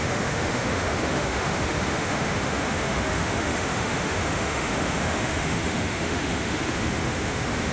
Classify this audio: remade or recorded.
remade